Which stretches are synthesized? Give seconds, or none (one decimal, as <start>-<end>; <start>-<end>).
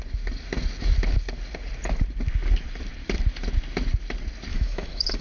4.5-5.2